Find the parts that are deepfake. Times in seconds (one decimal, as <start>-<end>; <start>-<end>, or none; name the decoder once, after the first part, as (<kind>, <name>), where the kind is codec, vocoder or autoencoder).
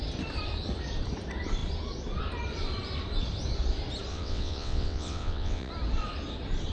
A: 4.1-5.7 (vocoder, WaveNeXt)